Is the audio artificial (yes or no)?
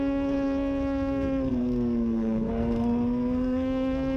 yes